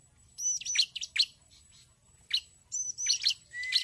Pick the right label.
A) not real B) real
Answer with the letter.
B